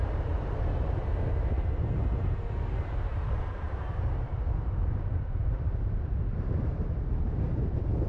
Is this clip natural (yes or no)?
no